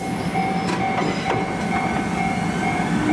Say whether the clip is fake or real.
real